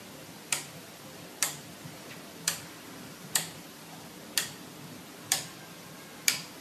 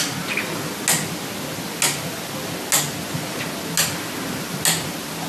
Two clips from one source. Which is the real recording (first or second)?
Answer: second